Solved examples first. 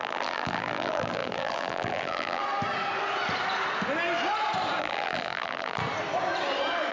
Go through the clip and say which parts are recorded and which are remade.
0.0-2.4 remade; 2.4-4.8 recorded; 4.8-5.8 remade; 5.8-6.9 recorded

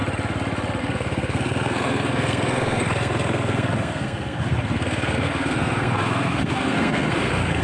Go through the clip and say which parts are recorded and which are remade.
0.0-0.8 recorded; 0.8-7.6 remade

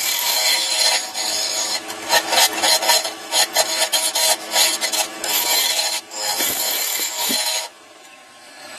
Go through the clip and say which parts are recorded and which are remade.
0.0-8.8 remade

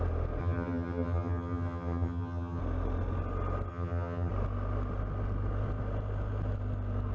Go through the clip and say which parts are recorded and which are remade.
0.0-0.4 recorded; 0.4-2.6 remade; 2.6-3.7 recorded; 3.7-4.3 remade; 4.3-7.1 recorded